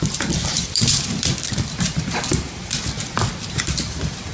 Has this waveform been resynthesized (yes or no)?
yes